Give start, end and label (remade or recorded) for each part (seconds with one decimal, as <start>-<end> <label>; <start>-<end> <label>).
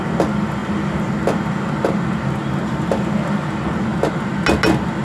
0.0-5.0 recorded